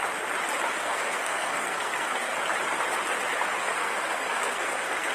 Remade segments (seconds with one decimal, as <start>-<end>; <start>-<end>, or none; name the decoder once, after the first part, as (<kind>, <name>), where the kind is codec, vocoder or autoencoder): 0.8-2.3 (codec, SNAC); 3.6-5.1